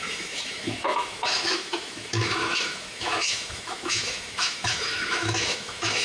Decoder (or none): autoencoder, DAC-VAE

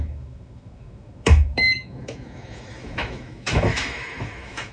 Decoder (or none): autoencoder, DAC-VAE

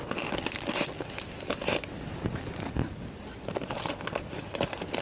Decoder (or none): none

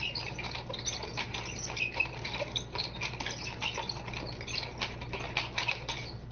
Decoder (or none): none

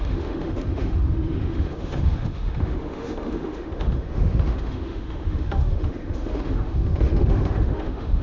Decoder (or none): autoencoder, DAC-VAE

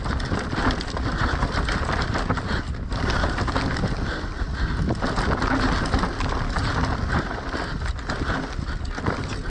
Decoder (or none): none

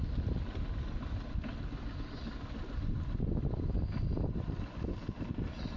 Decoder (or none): none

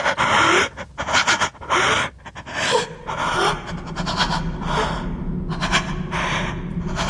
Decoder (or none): none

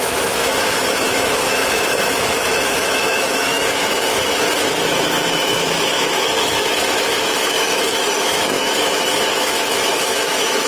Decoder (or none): autoencoder, DAC-VAE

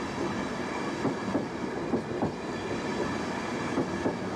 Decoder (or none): none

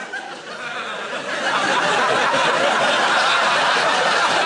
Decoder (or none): none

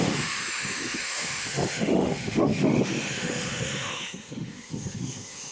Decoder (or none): autoencoder, DAC-VAE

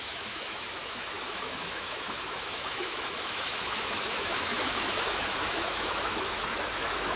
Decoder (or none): autoencoder, DAC-VAE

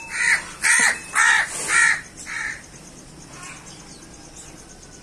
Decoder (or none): none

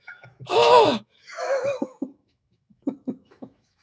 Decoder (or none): autoencoder, DAC-VAE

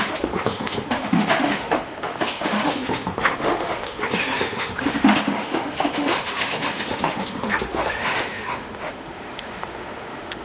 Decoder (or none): autoencoder, DAC-VAE